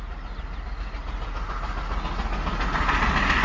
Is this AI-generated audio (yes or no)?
no